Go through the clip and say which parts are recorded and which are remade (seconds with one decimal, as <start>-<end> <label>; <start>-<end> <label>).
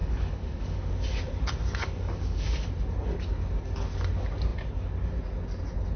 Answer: 0.0-0.9 remade; 0.9-1.8 recorded; 1.8-2.7 remade; 2.7-6.0 recorded